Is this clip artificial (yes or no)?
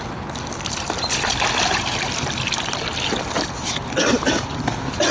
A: no